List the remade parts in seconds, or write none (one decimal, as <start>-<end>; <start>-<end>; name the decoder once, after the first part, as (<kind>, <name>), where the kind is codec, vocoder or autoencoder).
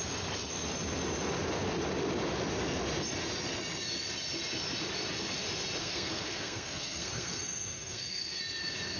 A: 5.8-8.4 (codec, SNAC)